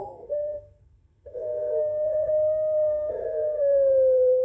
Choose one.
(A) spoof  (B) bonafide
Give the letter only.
A